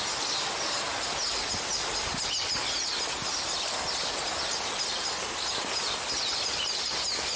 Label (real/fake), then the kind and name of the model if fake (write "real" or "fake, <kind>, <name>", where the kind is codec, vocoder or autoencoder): real